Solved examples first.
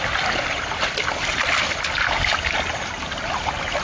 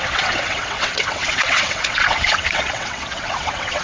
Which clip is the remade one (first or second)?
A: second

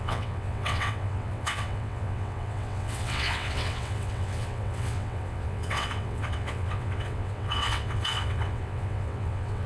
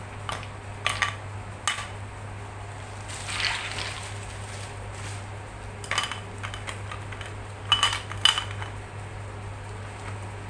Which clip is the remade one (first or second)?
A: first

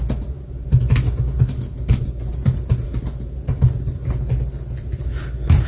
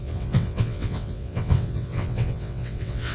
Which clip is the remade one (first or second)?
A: second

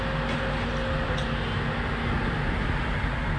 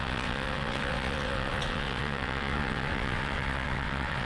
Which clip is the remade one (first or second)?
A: second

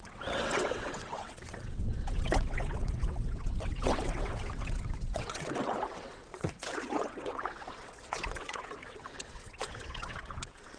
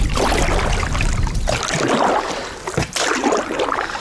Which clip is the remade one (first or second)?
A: first